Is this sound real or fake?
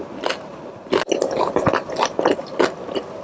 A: real